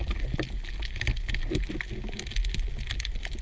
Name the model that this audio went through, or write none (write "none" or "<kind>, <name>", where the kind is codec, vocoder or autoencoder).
none